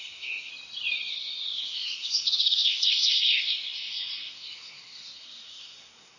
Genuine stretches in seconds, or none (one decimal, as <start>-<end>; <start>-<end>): 0.5-1.1